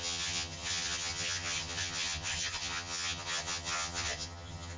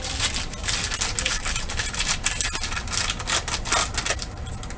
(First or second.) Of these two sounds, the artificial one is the first